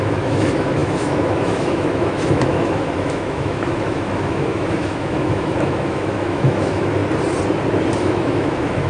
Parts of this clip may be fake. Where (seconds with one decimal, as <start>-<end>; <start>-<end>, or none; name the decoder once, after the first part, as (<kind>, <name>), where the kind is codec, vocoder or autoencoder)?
0.0-7.0 (autoencoder, DAC-VAE); 8.0-8.9